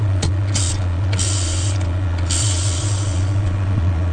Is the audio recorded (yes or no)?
no